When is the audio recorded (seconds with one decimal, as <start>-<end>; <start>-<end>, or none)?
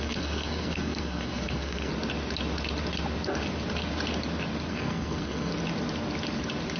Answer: 1.9-4.7; 5.5-6.8